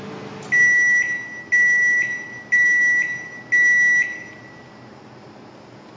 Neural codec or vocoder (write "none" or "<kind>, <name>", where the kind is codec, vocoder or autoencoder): none